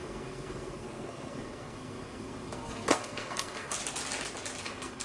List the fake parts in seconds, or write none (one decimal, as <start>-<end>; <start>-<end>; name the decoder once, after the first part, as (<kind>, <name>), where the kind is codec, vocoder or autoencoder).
0.0-3.8 (codec, SNAC); 4.6-5.0